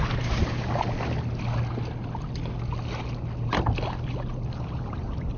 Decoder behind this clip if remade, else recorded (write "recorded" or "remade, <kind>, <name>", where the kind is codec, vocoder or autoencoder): recorded